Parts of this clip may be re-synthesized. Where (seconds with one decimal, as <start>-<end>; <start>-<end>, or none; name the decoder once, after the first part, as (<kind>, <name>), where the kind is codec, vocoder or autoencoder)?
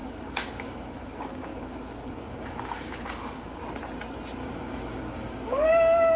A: 0.0-3.6 (codec, DAC); 4.4-5.7